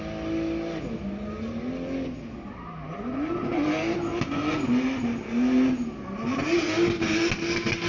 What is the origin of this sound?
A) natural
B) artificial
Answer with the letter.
A